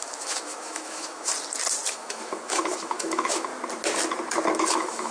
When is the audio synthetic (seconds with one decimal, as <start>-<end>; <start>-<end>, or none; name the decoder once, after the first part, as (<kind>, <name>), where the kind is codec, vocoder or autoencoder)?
0.0-1.3 (autoencoder, DAC-VAE); 1.9-3.5; 4.6-5.1